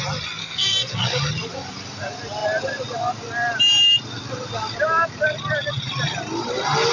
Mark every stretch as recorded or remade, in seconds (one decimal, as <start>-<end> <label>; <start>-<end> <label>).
0.0-0.4 recorded; 0.4-1.0 remade; 1.0-6.9 recorded